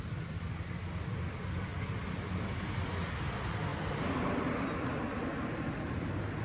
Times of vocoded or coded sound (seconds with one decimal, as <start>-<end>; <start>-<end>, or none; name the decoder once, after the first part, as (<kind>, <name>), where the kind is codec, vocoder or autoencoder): none